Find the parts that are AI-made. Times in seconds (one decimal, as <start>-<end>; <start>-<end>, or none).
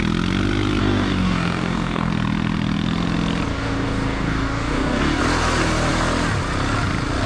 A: 0.8-2.1; 3.5-5.2